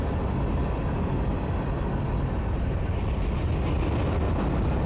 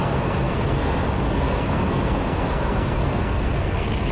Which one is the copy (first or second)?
second